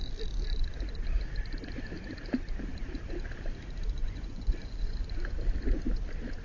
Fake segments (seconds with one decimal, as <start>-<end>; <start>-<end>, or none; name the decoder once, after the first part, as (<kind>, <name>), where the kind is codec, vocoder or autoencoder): 4.0-5.0 (vocoder, Vocos)